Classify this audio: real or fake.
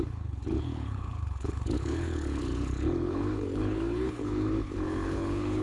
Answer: fake